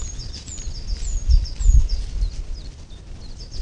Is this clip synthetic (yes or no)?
no